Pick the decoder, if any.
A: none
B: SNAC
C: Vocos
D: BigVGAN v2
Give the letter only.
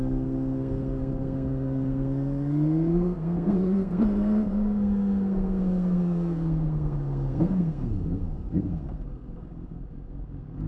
B